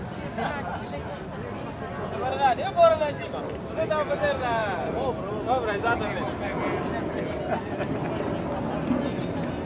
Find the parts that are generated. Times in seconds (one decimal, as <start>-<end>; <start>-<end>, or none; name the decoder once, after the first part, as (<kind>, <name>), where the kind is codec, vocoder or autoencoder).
none